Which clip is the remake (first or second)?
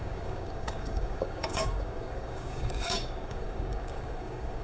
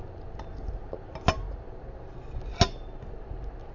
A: first